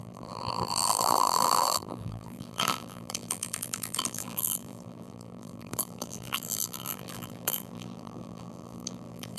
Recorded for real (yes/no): no